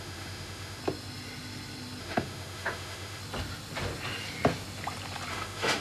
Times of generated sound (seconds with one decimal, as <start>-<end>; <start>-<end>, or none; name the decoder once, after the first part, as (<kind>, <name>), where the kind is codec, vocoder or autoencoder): 0.0-0.8 (autoencoder, DAC-VAE); 2.0-3.2; 5.3-5.8